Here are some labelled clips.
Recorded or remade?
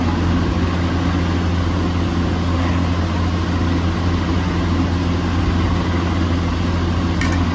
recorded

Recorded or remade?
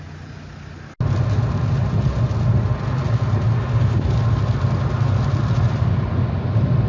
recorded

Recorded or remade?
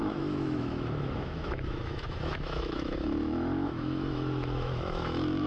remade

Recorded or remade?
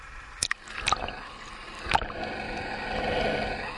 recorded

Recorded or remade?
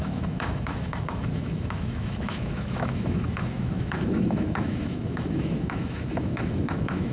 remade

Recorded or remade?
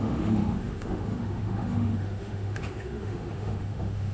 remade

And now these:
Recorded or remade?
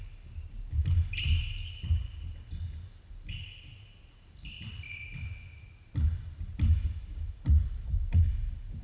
recorded